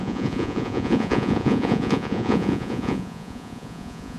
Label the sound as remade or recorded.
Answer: remade